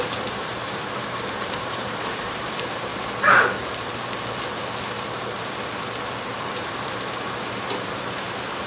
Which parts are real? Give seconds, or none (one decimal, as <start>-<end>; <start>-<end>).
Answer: 2.9-6.5